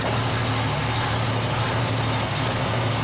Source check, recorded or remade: recorded